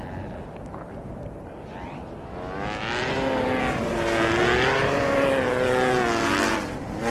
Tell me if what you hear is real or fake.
real